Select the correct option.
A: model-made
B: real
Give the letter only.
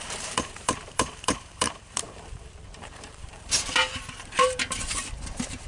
A